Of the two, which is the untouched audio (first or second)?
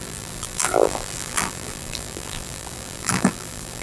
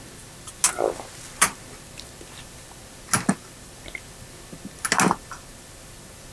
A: second